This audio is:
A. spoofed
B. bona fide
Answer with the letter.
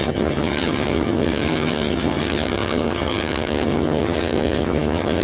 A